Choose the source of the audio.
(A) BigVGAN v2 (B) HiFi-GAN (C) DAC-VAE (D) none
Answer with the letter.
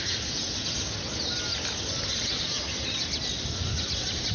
D